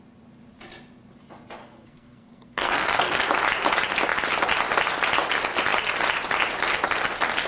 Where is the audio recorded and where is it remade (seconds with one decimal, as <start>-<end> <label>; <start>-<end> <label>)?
0.0-1.6 recorded; 1.6-3.2 remade; 3.2-7.5 recorded